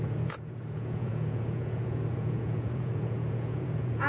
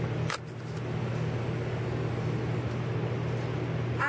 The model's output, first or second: first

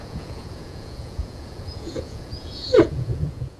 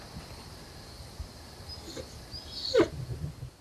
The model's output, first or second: first